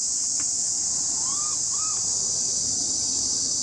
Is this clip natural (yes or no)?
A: yes